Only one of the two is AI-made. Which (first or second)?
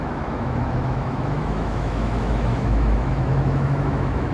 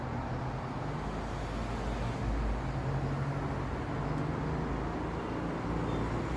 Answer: first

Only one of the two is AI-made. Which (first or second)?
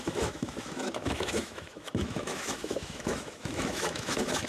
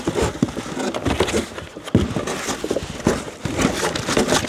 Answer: first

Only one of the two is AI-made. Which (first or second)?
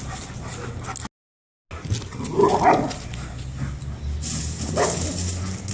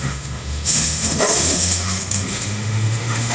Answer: second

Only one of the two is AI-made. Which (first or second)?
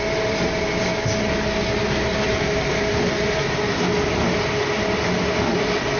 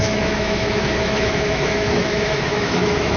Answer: second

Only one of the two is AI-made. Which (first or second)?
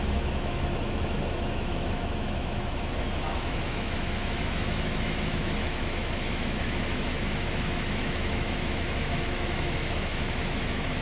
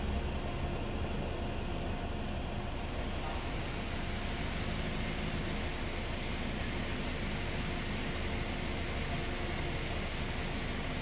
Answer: first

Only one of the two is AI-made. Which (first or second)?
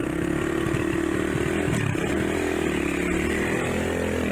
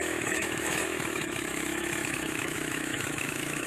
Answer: second